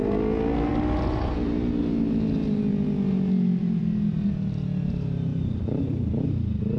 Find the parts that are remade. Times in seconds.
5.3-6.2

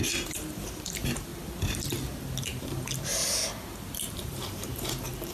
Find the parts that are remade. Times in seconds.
0.0-1.3; 2.4-3.2; 4.1-5.3